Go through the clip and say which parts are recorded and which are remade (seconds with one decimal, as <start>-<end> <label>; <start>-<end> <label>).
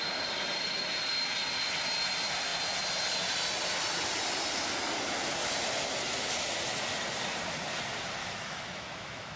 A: 0.0-8.2 recorded; 8.2-9.4 remade